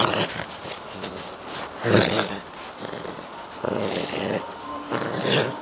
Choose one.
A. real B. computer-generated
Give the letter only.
A